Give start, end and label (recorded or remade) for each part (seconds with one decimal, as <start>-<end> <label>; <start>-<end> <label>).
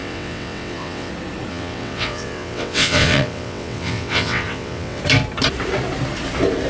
0.0-1.1 remade; 1.1-1.5 recorded; 1.5-5.0 remade; 5.0-6.7 recorded